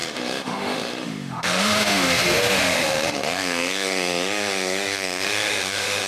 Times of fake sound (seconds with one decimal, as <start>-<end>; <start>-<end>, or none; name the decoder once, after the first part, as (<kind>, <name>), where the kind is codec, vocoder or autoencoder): 0.0-6.1 (autoencoder, DAC-VAE)